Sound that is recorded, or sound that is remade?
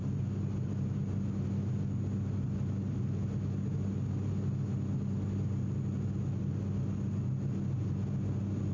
recorded